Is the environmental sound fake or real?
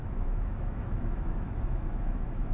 fake